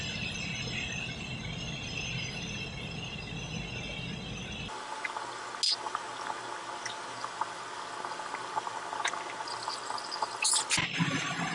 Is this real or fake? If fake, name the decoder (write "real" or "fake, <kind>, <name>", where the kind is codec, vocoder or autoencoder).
real